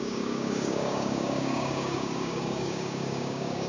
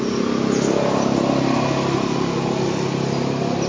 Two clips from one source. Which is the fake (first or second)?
first